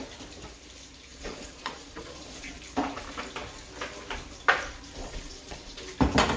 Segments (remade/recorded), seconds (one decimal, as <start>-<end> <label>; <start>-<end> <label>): 0.0-1.1 recorded; 1.1-2.5 remade; 2.5-5.0 recorded; 5.0-5.8 remade; 5.8-6.4 recorded